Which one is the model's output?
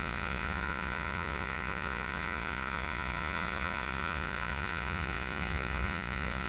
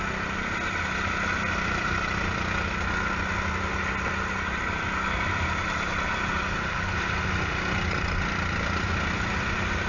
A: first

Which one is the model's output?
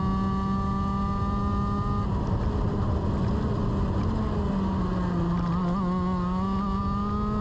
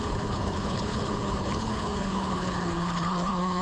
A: second